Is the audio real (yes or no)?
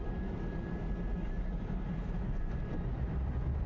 yes